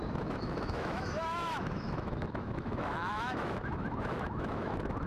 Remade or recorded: remade